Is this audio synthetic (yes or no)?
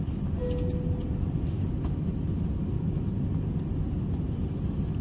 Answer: no